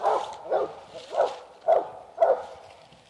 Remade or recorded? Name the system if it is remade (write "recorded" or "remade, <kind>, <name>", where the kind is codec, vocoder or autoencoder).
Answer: recorded